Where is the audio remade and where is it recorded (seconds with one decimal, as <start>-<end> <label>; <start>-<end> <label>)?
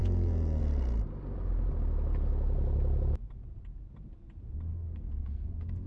0.0-0.6 remade; 0.6-4.7 recorded; 4.7-5.9 remade